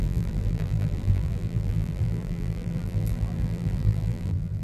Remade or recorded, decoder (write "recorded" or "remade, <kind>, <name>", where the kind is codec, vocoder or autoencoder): remade, vocoder, BigVGAN v2